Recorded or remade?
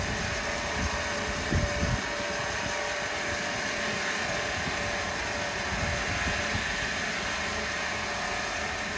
recorded